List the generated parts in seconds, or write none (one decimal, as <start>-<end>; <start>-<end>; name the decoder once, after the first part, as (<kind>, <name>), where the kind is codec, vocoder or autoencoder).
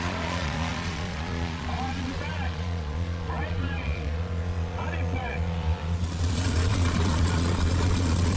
0.0-8.4 (vocoder, Vocos)